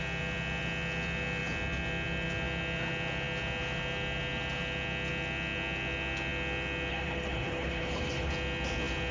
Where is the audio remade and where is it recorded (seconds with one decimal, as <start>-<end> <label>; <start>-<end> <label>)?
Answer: 0.0-6.9 recorded; 6.9-8.3 remade; 8.3-9.1 recorded